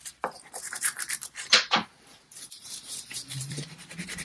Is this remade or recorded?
remade